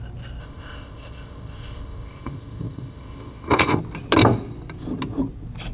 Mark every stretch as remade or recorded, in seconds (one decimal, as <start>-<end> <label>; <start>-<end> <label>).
0.0-0.4 recorded; 0.4-3.8 remade; 3.8-5.7 recorded